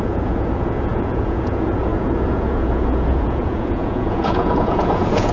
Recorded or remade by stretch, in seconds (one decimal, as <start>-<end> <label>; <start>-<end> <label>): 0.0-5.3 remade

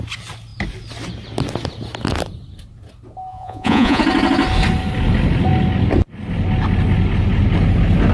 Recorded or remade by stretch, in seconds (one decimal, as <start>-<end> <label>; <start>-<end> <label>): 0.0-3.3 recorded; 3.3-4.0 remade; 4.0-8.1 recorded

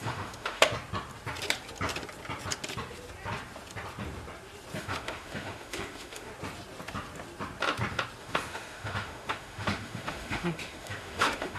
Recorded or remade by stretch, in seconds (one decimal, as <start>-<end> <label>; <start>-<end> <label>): 0.0-0.7 remade; 0.7-4.8 recorded; 4.8-6.3 remade; 6.3-8.2 recorded; 8.2-11.6 remade